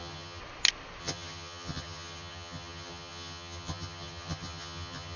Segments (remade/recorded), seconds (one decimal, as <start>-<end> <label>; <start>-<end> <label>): 0.0-0.4 remade; 0.4-1.0 recorded; 1.0-5.2 remade